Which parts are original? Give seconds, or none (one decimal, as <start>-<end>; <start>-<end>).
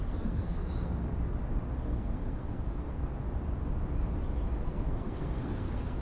1.1-1.8; 3.1-4.6